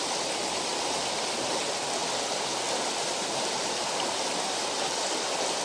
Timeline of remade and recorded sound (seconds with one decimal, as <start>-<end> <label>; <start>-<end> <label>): 0.0-5.6 recorded